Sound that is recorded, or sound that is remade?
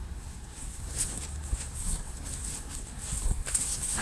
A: remade